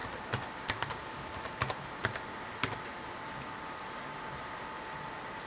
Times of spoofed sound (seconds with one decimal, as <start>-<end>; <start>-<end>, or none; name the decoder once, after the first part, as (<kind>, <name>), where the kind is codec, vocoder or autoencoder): none